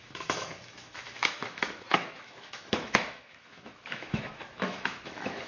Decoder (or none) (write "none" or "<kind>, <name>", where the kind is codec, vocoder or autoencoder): autoencoder, DAC-VAE